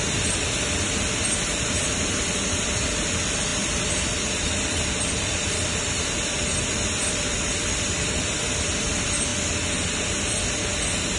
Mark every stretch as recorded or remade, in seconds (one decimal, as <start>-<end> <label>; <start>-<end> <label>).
0.0-9.3 remade; 9.3-11.2 recorded